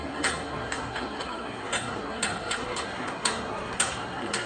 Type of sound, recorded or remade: remade